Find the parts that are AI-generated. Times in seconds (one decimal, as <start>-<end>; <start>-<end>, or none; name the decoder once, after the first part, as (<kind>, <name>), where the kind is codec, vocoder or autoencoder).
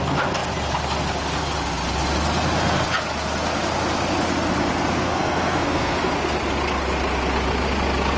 4.9-6.1 (codec, SNAC)